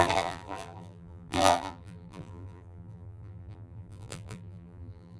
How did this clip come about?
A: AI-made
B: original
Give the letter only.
A